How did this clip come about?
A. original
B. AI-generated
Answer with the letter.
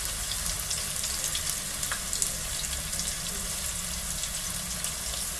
A